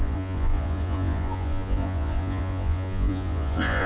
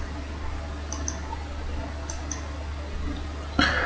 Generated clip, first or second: first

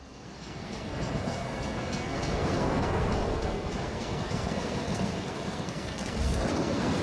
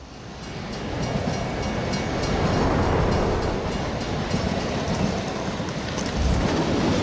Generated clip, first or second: first